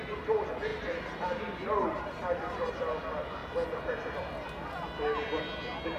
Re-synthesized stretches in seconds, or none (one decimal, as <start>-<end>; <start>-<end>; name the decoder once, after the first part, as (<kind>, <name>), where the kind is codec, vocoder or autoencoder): 0.7-2.7 (vocoder, BigVGAN v2)

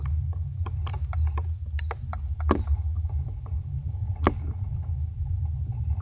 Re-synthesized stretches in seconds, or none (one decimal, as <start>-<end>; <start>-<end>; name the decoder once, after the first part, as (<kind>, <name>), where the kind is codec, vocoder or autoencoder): 4.0-5.4 (vocoder, BigVGAN v2)

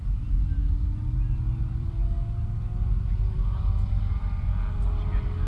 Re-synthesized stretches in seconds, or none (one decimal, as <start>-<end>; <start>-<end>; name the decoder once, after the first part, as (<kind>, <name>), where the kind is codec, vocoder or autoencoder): 0.0-0.6 (vocoder, BigVGAN v2); 1.6-2.0

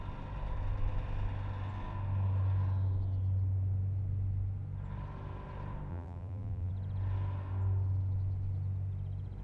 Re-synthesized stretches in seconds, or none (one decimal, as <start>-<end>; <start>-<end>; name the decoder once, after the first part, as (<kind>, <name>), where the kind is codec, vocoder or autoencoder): 5.9-6.7 (vocoder, BigVGAN v2)

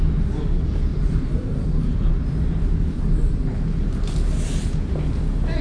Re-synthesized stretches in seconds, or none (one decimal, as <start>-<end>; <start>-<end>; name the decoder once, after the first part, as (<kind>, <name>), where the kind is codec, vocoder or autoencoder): 0.9-3.4 (vocoder, BigVGAN v2)

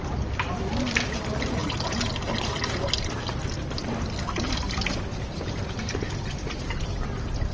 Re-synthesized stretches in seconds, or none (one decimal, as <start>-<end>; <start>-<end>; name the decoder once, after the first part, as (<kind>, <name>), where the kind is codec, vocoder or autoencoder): none

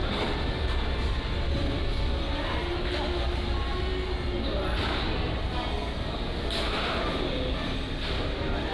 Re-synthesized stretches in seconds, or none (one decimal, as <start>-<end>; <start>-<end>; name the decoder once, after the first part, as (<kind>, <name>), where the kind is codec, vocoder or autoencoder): none